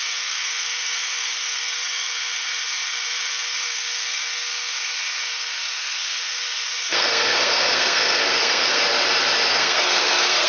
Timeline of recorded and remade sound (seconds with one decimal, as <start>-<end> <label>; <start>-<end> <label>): 0.0-8.8 remade; 8.8-9.5 recorded; 9.5-10.5 remade